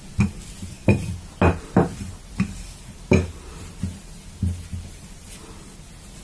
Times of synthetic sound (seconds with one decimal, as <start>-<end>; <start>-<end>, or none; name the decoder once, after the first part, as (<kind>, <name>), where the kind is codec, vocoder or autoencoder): none